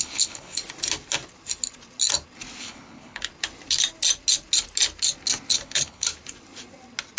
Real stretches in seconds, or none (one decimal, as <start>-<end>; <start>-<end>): 0.6-2.6; 3.3-5.5; 6.1-7.2

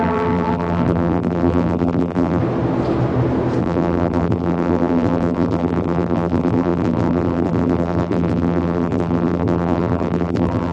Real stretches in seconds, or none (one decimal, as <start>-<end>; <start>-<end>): 2.4-3.6